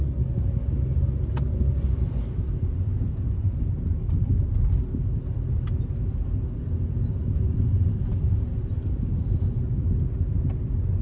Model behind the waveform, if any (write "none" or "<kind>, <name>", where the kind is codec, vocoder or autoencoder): none